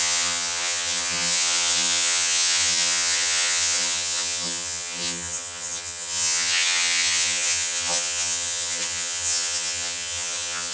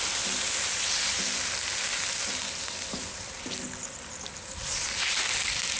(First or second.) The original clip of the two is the second